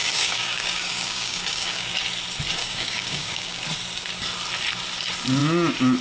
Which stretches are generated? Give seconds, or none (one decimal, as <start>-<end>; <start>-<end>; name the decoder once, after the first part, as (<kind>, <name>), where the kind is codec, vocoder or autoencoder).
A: 0.0-1.9 (codec, DAC); 2.6-3.6